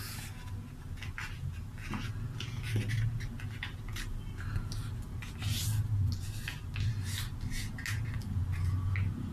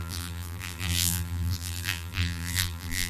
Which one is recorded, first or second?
first